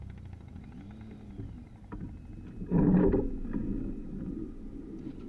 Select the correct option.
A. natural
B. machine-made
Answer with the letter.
A